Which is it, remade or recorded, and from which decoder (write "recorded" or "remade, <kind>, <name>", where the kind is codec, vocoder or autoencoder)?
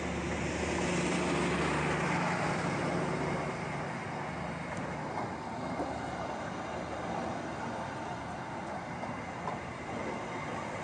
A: recorded